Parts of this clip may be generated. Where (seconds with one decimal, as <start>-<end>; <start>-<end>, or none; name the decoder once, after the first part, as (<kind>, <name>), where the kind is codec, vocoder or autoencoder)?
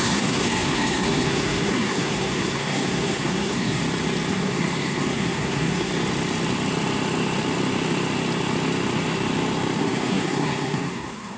0.0-3.8 (codec, SNAC); 4.3-5.9; 9.8-11.4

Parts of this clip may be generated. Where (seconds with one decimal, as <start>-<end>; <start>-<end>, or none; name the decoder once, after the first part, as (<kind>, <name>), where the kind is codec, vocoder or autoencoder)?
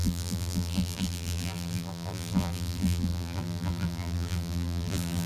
0.0-5.3 (vocoder, BigVGAN v2)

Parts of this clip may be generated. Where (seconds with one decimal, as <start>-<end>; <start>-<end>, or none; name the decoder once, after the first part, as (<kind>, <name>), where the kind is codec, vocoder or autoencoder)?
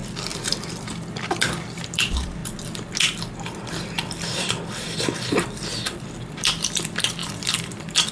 0.0-2.4 (vocoder, BigVGAN v2); 3.7-8.1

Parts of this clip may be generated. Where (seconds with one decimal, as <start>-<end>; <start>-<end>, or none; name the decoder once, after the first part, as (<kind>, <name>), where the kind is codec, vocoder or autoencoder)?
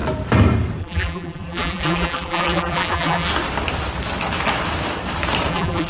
0.8-3.3 (vocoder, BigVGAN v2); 5.5-5.9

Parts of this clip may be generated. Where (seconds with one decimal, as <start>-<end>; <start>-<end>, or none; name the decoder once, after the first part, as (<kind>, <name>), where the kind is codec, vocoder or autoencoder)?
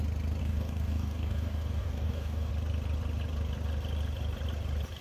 0.4-2.5 (codec, DAC)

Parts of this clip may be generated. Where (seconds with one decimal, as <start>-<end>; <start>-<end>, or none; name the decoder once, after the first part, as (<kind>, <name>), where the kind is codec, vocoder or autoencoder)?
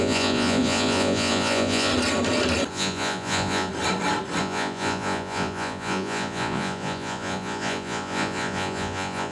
0.0-1.9 (vocoder, Vocos); 2.7-3.7; 4.4-9.3